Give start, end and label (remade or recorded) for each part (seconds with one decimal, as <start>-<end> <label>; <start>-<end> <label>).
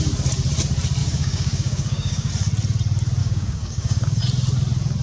0.0-1.0 recorded; 1.0-2.3 remade; 2.3-3.2 recorded; 3.2-4.2 remade; 4.2-5.0 recorded